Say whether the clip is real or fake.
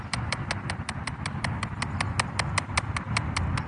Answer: real